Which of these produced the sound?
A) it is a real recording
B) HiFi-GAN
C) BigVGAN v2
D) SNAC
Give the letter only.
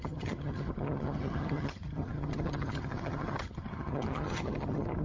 B